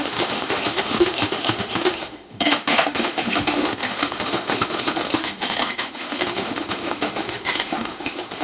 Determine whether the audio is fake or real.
fake